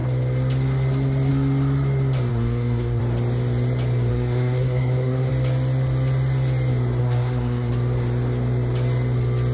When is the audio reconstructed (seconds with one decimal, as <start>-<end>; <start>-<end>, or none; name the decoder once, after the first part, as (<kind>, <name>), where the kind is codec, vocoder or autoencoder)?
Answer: 2.3-3.0 (codec, SNAC); 4.1-5.3; 7.0-7.7